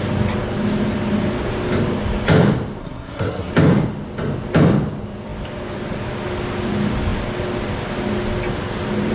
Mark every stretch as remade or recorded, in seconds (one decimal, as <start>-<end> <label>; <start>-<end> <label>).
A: 0.0-2.8 recorded; 2.8-3.5 remade; 3.5-9.1 recorded